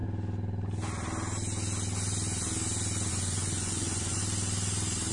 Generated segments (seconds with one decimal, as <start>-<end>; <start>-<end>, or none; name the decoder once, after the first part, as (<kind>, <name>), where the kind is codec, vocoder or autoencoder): 3.1-4.2 (vocoder, Vocos)